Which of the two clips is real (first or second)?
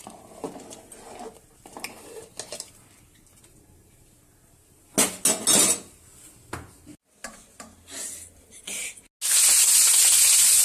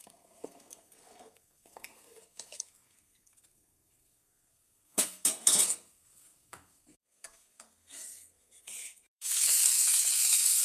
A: first